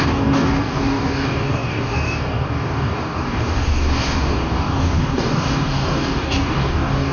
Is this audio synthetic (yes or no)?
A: yes